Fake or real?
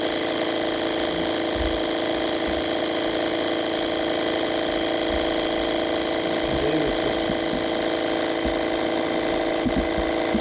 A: real